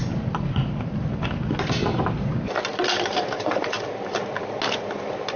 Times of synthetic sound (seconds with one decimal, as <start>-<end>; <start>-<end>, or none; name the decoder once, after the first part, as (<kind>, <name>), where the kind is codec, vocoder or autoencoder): none